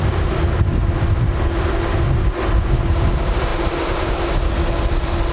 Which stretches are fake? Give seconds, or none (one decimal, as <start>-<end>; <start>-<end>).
none